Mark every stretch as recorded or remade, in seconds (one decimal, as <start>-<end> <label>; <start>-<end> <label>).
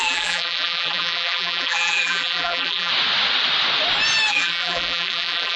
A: 0.0-2.9 remade; 2.9-4.3 recorded; 4.3-5.6 remade